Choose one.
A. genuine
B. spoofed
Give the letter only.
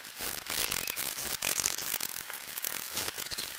B